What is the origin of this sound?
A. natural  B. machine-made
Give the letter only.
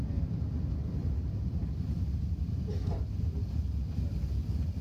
A